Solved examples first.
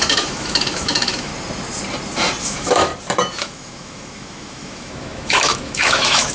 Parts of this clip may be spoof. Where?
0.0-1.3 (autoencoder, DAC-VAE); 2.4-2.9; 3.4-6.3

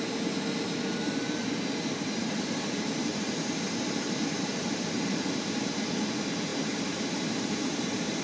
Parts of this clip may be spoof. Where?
2.2-5.7 (vocoder, BigVGAN v2); 6.5-8.2

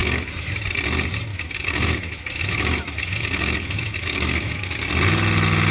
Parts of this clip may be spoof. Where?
0.0-0.5 (autoencoder, DAC-VAE); 1.3-4.7

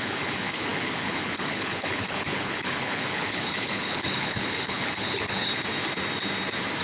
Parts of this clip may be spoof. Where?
0.0-5.5 (codec, HILCodec)

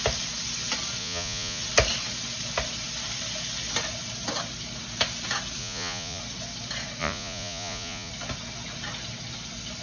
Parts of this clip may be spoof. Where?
1.0-1.6 (vocoder, Vocos); 5.6-6.2; 7.0-8.1